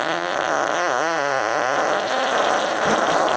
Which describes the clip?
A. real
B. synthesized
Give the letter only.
B